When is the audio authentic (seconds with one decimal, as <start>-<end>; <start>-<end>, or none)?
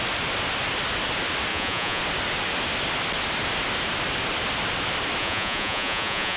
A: 0.0-1.5; 2.0-5.2